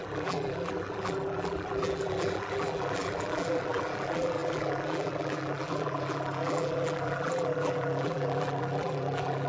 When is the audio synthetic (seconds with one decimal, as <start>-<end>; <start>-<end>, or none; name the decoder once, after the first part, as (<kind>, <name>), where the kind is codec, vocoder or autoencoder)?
0.0-9.5 (vocoder, BigVGAN v2)